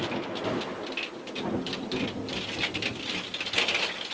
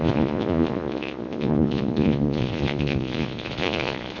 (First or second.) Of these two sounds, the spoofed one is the second